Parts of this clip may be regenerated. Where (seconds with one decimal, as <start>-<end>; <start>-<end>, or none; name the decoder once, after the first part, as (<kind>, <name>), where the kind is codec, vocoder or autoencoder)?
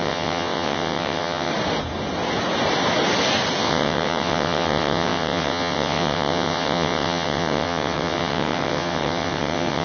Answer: 0.0-1.5 (vocoder, WaveNeXt); 3.6-9.8